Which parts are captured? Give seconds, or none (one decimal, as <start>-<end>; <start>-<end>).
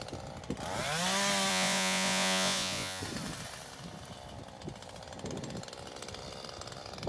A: 0.0-1.5; 3.0-7.1